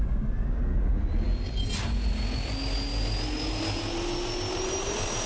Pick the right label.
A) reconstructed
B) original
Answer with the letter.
B